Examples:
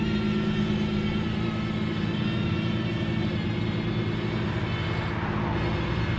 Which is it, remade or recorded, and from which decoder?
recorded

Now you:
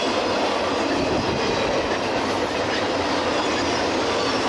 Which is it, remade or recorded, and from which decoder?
recorded